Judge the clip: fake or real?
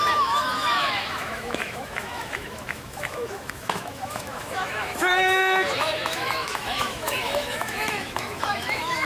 fake